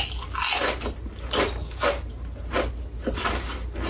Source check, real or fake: real